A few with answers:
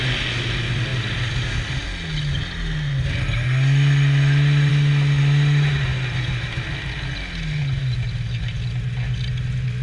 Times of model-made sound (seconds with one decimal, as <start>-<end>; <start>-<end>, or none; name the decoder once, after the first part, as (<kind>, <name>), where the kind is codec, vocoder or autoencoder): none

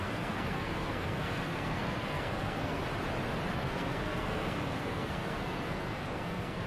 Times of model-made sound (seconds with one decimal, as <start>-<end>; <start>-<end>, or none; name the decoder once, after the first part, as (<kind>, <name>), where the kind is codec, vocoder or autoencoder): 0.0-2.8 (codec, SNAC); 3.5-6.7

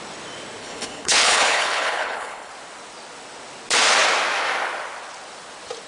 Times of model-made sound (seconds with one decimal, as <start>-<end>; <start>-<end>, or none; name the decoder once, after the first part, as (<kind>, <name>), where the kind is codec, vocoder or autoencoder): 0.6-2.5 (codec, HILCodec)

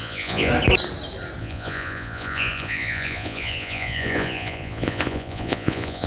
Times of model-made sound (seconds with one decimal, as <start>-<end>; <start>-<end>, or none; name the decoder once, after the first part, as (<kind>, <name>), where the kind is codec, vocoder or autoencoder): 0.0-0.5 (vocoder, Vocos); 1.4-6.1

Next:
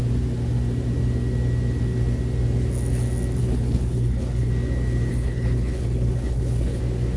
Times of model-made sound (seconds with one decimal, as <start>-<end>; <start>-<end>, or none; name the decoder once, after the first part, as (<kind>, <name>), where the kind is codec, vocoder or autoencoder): 3.4-4.5 (codec, HILCodec); 5.1-6.8

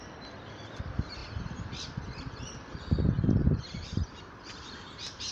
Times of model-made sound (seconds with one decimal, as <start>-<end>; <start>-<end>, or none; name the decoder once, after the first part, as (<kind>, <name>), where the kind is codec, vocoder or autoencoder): 0.0-1.2 (vocoder, BigVGAN v2); 3.6-5.3

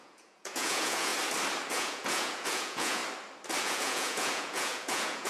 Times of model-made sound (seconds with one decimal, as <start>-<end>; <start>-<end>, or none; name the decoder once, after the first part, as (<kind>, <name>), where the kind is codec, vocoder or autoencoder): 0.0-1.1 (vocoder, Vocos); 1.7-3.0; 3.6-5.3

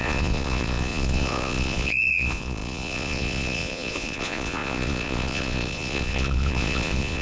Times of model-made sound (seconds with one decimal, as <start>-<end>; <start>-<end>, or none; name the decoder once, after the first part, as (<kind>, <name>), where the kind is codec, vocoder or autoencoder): 0.0-7.2 (vocoder, Vocos)